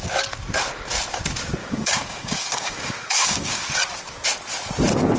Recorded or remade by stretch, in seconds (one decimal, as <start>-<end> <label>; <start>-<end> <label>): 0.0-1.6 recorded; 1.6-3.6 remade; 3.6-5.2 recorded